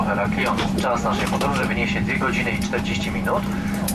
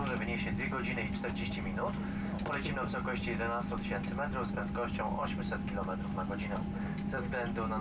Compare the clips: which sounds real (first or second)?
second